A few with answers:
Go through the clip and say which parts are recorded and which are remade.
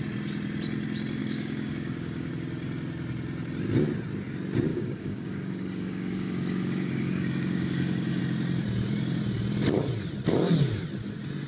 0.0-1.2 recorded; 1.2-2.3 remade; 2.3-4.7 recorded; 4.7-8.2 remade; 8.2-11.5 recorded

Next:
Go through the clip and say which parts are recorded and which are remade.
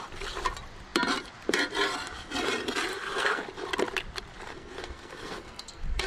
0.0-2.9 recorded; 2.9-3.4 remade; 3.4-4.5 recorded; 4.5-6.1 remade